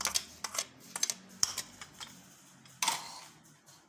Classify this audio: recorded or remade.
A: recorded